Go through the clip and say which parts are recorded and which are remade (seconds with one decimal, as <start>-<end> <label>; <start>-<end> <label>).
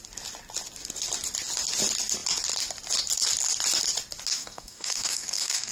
0.0-4.3 recorded; 4.3-5.7 remade